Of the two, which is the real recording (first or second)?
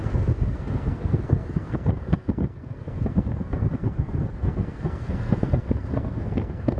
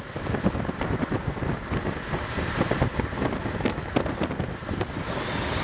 second